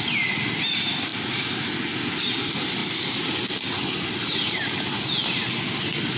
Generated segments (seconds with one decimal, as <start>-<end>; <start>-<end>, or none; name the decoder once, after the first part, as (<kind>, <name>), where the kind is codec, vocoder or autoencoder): none